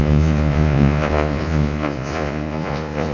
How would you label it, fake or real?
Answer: fake